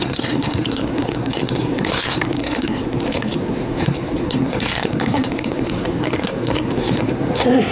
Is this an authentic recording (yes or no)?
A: no